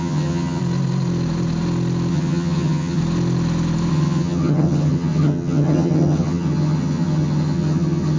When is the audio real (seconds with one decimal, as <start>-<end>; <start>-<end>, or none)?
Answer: 0.6-2.1; 3.0-3.9